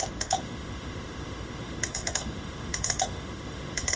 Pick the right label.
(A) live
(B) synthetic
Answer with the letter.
B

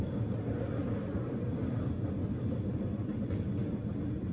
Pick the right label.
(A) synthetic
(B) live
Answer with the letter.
B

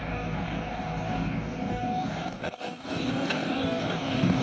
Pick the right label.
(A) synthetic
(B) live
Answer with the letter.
A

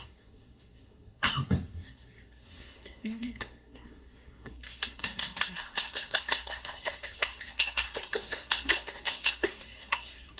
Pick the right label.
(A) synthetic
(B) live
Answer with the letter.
A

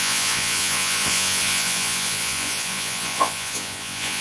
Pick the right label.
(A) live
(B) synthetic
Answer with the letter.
B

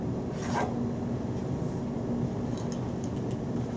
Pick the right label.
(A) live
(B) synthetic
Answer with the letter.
A